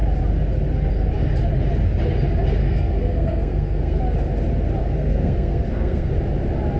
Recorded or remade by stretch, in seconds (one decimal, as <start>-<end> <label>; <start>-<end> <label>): 0.0-2.6 recorded; 2.6-4.0 remade; 4.0-4.8 recorded; 4.8-6.1 remade; 6.1-6.8 recorded